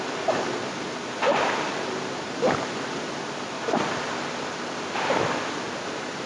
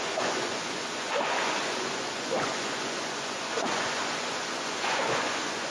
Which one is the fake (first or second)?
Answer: second